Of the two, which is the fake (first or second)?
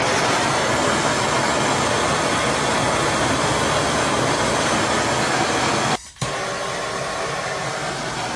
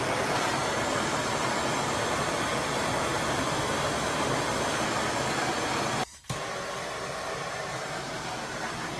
second